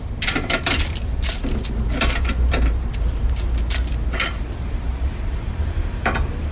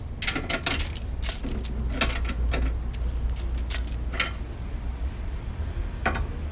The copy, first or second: first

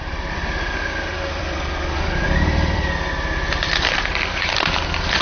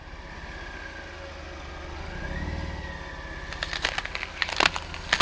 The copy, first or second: first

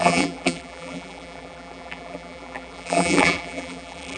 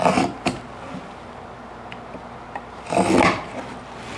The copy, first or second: first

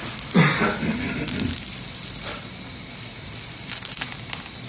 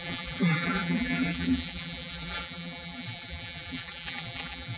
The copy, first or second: second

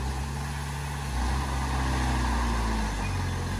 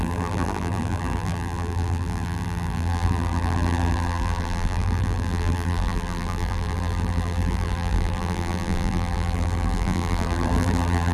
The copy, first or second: second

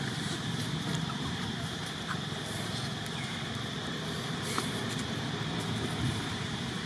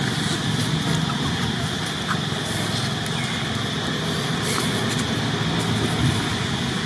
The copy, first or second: first